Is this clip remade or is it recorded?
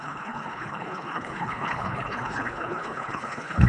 remade